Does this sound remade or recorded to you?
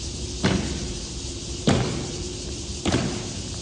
recorded